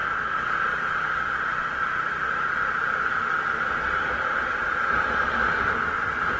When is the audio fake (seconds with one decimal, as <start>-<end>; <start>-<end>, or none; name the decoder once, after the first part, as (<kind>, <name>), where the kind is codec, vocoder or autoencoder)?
none